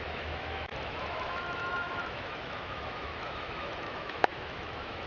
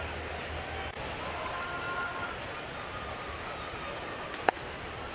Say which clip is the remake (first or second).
first